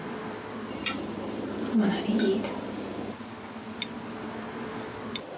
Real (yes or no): no